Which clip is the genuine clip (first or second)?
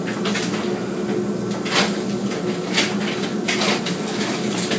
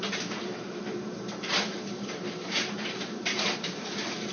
first